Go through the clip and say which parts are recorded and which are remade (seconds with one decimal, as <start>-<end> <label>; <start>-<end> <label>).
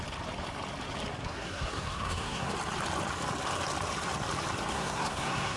0.0-1.2 recorded; 1.2-2.5 remade; 2.5-4.7 recorded; 4.7-5.6 remade